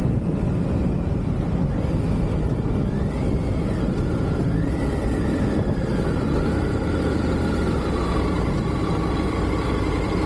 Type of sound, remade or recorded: remade